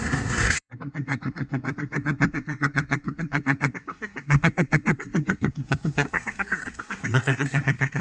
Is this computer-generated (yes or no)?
yes